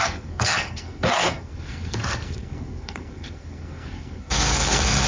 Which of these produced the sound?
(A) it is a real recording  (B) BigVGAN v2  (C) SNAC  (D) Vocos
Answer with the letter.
C